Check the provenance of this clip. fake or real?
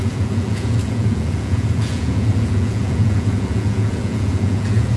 fake